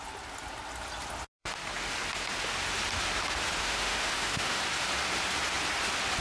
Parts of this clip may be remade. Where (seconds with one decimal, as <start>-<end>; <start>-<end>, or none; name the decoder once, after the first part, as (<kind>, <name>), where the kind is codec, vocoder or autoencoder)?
3.6-4.6 (autoencoder, DAC-VAE)